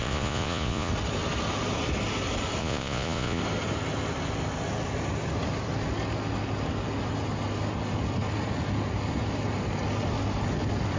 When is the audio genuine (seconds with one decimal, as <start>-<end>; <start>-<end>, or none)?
0.9-2.6; 3.4-11.0